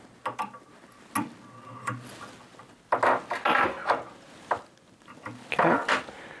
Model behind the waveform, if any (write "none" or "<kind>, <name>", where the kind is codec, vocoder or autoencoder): none